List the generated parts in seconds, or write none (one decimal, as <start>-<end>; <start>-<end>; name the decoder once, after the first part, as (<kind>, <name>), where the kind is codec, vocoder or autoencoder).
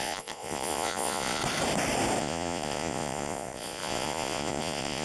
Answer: 0.0-1.4 (vocoder, Vocos); 2.2-5.0